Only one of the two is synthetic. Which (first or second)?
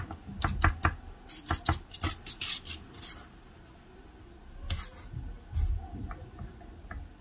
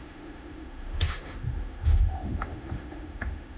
second